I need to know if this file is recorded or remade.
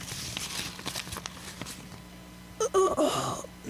remade